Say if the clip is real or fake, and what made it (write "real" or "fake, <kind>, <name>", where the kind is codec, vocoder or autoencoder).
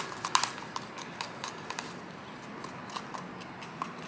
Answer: real